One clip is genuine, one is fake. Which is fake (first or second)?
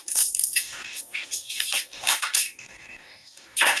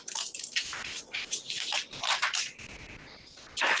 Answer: first